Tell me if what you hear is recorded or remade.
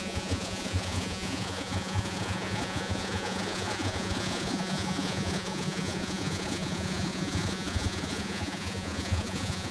remade